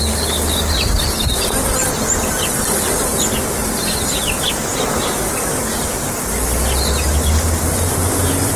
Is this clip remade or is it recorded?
recorded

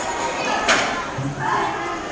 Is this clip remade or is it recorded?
recorded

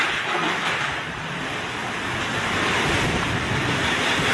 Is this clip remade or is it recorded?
remade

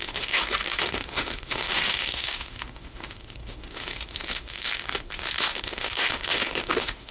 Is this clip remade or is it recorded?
remade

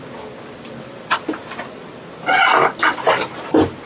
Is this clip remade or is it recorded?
recorded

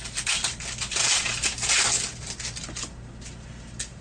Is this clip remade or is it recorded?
recorded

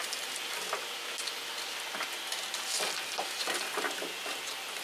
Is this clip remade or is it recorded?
recorded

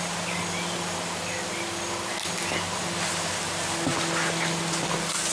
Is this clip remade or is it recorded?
recorded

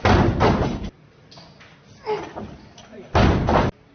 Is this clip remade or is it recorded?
recorded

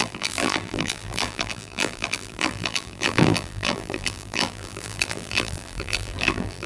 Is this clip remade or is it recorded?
remade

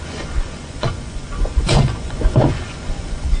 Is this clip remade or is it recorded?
remade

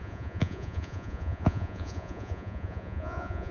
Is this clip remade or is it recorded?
remade